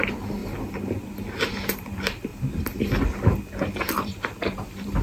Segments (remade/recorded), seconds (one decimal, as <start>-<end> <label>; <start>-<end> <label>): 0.0-0.4 remade; 0.4-1.5 recorded; 1.5-2.3 remade; 2.3-3.7 recorded; 3.7-5.0 remade